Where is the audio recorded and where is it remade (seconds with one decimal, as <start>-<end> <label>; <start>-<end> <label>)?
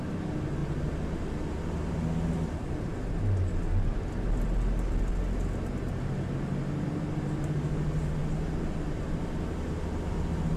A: 0.0-10.6 recorded